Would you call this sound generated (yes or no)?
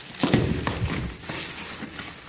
no